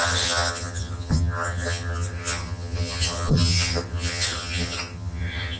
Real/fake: fake